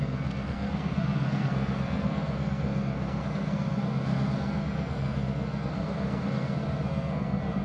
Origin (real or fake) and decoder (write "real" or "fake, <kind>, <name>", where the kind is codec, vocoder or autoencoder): fake, codec, SNAC